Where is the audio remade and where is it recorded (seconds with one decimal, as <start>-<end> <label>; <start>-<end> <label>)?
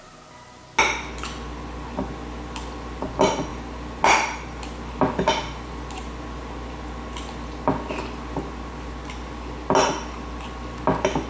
0.0-11.3 recorded